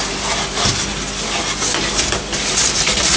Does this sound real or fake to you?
real